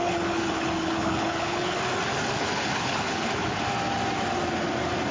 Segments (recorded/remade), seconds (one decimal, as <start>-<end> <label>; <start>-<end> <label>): 0.0-1.8 remade; 1.8-2.4 recorded; 2.4-3.6 remade; 3.6-5.1 recorded

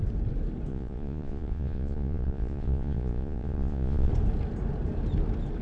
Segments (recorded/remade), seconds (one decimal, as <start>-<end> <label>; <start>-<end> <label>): 0.0-0.7 recorded; 0.7-4.1 remade; 4.1-5.6 recorded

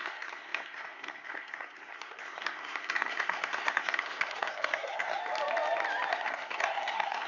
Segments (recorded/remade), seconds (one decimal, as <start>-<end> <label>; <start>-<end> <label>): 0.0-5.2 remade; 5.2-6.1 recorded; 6.1-7.3 remade